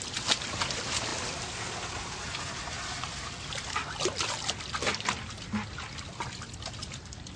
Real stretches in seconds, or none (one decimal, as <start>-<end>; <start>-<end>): 0.0-7.4